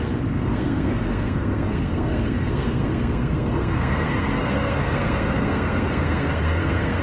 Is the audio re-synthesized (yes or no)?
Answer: yes